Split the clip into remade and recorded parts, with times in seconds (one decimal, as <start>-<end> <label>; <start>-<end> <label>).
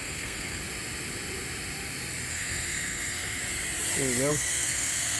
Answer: 0.0-0.6 remade; 0.6-2.3 recorded; 2.3-3.4 remade; 3.4-4.3 recorded; 4.3-5.2 remade